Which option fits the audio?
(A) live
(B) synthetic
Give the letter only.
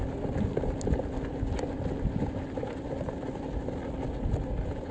A